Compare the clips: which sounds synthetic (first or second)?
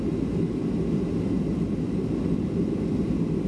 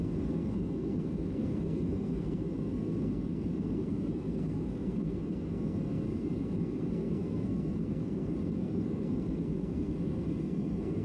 second